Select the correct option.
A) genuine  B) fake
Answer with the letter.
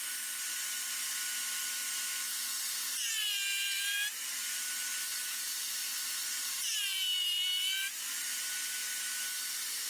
A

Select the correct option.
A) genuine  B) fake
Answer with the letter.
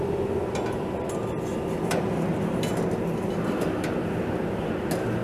A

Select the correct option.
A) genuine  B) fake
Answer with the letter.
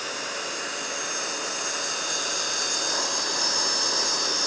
A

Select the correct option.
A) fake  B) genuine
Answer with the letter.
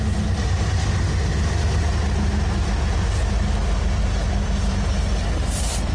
B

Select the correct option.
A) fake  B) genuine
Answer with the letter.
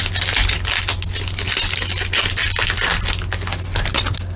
B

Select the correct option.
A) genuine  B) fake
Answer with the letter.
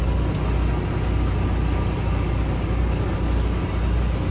A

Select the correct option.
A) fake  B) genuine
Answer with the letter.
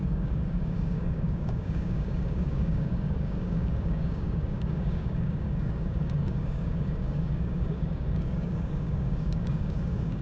A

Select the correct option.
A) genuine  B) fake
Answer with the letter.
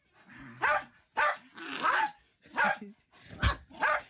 A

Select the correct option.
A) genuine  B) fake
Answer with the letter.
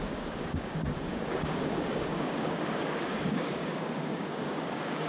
B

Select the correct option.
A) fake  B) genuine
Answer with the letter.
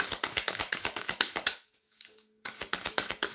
A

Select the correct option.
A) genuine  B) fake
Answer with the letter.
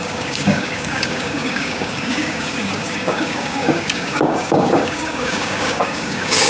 B